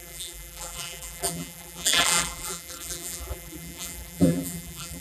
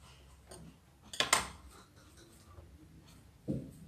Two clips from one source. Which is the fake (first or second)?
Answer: first